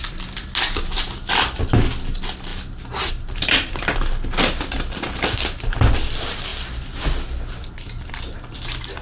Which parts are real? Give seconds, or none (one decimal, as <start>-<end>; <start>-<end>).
0.0-9.0